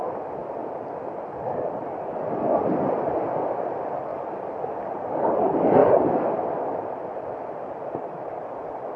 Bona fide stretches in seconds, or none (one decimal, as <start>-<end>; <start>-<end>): 0.0-9.0

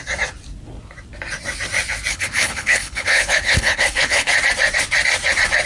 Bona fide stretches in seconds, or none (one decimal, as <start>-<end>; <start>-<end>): 0.0-2.1; 4.3-5.7

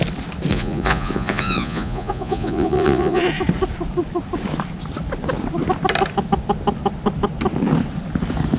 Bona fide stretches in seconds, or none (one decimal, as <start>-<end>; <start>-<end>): 0.0-0.5; 3.2-8.6

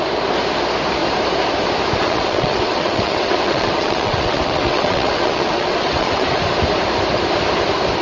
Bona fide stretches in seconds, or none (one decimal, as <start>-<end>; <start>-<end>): 0.0-2.0; 6.4-8.0

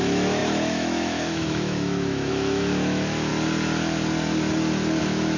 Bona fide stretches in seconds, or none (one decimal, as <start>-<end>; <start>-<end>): 3.3-5.0

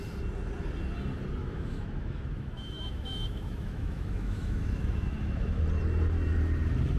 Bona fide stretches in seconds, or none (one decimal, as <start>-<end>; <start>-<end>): 0.0-1.4; 5.6-7.0

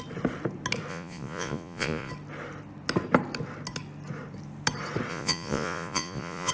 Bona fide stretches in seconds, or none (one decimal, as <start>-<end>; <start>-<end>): 0.0-0.9; 2.1-5.1